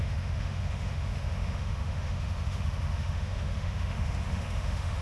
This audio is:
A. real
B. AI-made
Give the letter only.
B